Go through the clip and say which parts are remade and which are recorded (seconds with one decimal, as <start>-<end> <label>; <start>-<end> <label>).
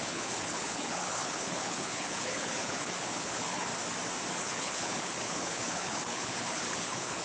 0.0-3.7 remade; 3.7-4.4 recorded; 4.4-7.2 remade